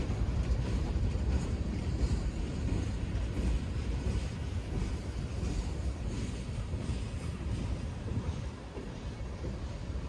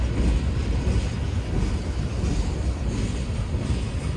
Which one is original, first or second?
second